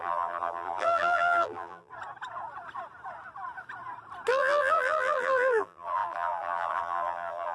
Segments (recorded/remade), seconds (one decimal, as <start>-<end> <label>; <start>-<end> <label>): 0.0-1.9 remade; 1.9-4.3 recorded; 4.3-7.5 remade